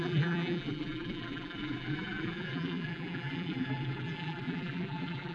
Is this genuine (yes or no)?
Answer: no